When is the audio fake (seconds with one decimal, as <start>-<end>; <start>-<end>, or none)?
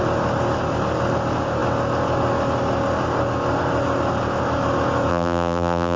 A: 5.1-6.0